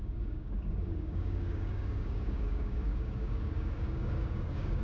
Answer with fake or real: fake